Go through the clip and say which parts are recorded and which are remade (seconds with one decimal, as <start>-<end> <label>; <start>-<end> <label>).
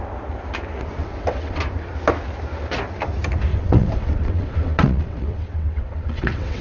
0.0-1.0 recorded; 1.0-1.6 remade; 1.6-3.5 recorded; 3.5-6.6 remade